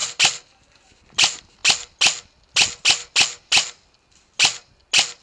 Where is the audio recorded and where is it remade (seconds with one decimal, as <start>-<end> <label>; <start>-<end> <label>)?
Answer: 0.0-5.2 recorded